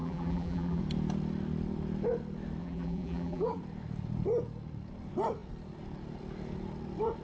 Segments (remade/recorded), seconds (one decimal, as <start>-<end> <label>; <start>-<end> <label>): 0.0-0.8 remade; 0.8-2.6 recorded; 2.6-3.6 remade; 3.6-7.2 recorded